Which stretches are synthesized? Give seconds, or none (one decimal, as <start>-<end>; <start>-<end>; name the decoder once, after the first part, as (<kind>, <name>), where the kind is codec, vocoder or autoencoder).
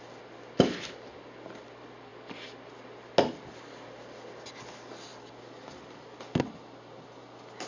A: none